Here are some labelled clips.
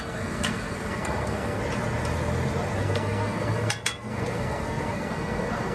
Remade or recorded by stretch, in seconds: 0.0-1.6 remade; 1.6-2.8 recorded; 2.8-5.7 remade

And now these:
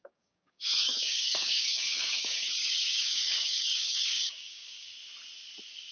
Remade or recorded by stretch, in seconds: 0.0-4.9 remade; 4.9-5.9 recorded

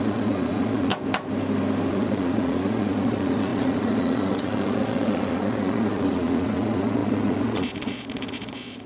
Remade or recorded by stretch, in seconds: 0.0-0.9 remade; 0.9-1.9 recorded; 1.9-8.9 remade

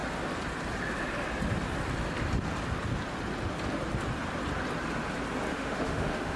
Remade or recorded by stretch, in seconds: 0.0-5.5 recorded; 5.5-6.4 remade